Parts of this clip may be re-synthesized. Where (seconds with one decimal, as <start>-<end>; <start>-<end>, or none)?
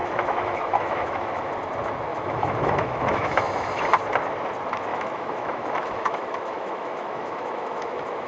0.0-1.5; 2.1-3.8; 4.9-8.3